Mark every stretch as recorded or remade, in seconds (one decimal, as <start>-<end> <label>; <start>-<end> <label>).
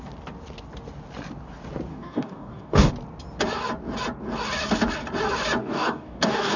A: 0.0-1.9 recorded; 1.9-2.9 remade; 2.9-5.6 recorded; 5.6-6.6 remade